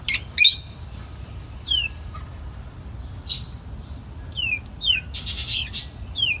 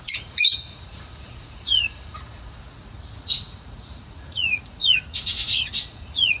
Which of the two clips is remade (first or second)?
second